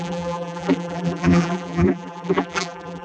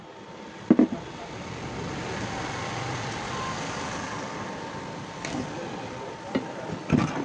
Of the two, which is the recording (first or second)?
second